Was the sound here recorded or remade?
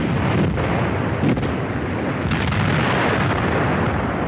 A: recorded